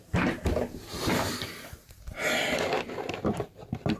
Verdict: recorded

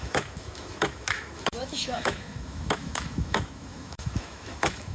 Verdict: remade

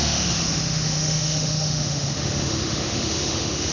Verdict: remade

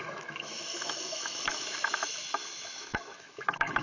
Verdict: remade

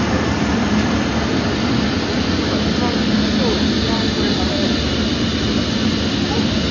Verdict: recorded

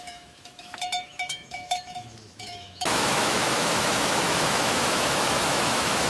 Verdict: remade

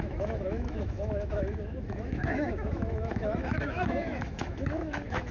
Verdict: remade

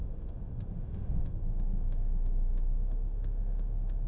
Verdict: remade